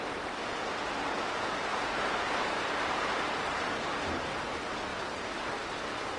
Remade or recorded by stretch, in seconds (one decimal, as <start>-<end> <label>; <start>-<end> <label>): 0.0-1.7 recorded; 1.7-3.1 remade; 3.1-6.2 recorded